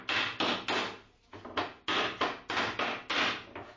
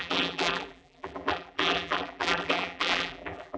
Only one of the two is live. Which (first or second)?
first